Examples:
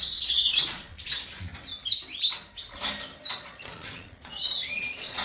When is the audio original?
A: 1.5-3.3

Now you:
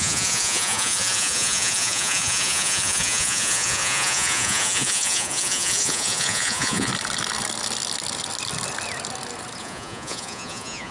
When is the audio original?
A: 6.9-9.6